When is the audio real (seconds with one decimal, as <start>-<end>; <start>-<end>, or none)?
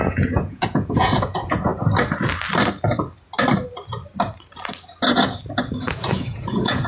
1.7-5.8